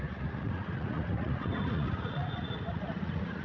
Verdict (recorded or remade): remade